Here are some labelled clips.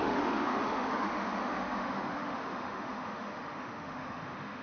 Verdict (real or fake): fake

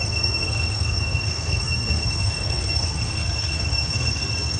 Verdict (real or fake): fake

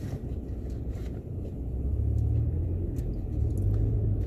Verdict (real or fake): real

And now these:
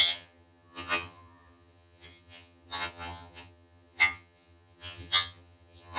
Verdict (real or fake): fake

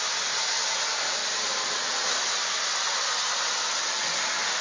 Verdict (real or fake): real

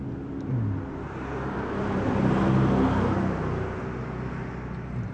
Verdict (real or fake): real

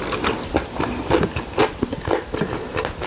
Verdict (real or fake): real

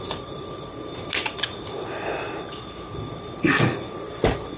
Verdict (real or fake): fake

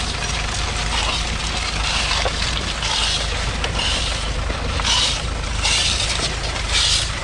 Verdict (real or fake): real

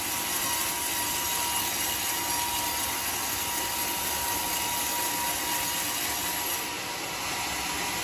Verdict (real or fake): real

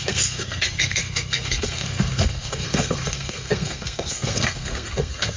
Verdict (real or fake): fake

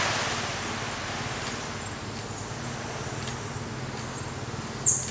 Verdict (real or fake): real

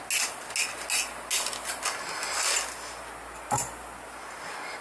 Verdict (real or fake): real